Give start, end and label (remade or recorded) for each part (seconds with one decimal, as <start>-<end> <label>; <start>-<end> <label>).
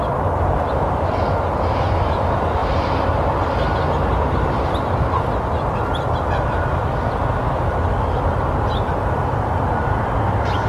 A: 0.0-0.5 remade; 0.5-10.7 recorded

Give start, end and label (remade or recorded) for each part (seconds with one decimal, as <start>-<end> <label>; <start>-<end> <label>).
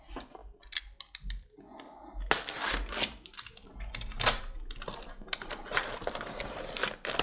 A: 0.0-7.2 recorded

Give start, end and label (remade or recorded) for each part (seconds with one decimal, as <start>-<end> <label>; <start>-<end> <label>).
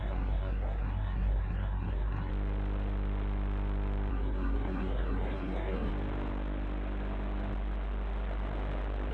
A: 0.0-2.3 remade; 2.3-4.1 recorded; 4.1-5.9 remade; 5.9-9.1 recorded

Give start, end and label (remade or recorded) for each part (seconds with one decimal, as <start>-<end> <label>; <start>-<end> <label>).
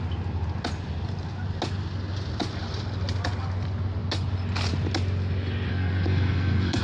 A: 0.0-5.7 recorded; 5.7-6.8 remade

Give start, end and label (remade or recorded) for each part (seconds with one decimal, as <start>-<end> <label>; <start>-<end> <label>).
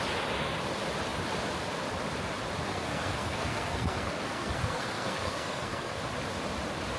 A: 0.0-2.7 recorded; 2.7-6.0 remade; 6.0-7.0 recorded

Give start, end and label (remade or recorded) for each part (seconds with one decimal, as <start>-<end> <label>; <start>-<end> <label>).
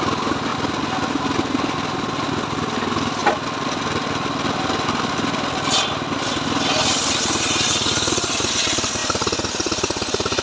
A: 0.0-10.4 recorded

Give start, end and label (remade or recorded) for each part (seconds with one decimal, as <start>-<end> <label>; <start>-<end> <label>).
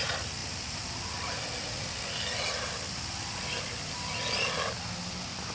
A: 0.0-5.5 recorded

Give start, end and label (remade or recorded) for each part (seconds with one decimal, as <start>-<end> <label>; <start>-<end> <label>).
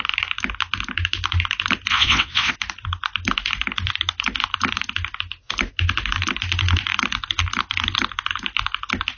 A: 0.0-1.9 recorded; 1.9-2.5 remade; 2.5-9.2 recorded